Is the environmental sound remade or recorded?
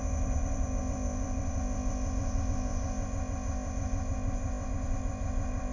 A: remade